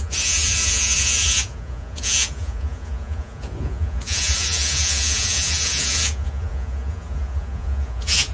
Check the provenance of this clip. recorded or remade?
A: remade